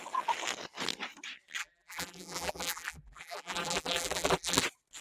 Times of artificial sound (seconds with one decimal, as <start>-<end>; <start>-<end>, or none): 1.6-4.6

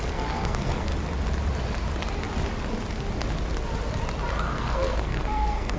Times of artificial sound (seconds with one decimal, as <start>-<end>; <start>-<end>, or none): 0.0-0.9; 4.4-5.8

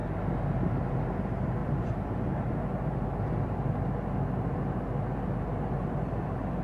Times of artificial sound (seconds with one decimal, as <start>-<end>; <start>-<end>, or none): none

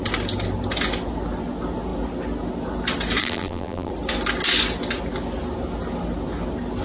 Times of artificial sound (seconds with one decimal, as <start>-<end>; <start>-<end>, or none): 3.2-3.9

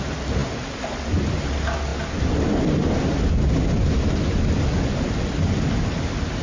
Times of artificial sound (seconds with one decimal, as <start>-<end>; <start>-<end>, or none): none